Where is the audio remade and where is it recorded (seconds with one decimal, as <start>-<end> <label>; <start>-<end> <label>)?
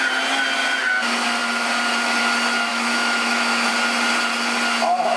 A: 0.0-2.7 recorded; 2.7-3.7 remade; 3.7-5.2 recorded